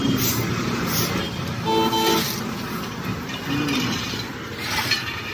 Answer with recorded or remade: recorded